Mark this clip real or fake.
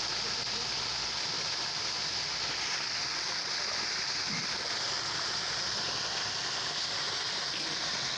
real